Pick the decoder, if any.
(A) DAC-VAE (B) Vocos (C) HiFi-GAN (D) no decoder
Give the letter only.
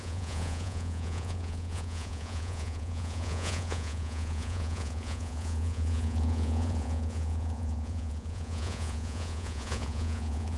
B